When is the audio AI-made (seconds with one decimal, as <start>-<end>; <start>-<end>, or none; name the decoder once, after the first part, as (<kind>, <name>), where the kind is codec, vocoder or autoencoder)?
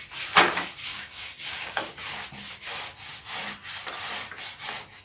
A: 0.9-1.8 (codec, DAC)